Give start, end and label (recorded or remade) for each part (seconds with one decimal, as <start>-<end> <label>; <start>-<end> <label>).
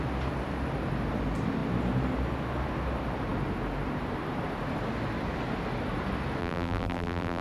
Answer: 0.0-6.4 recorded; 6.4-7.4 remade